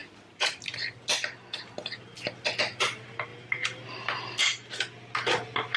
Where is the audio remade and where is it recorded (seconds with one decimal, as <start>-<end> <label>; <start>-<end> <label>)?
0.0-0.5 remade; 0.5-5.8 recorded